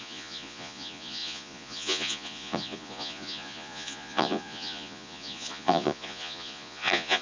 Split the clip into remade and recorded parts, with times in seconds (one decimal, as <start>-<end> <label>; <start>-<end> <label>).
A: 0.0-7.2 remade